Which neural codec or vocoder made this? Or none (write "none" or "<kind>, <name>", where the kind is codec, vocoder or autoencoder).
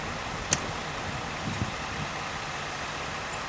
none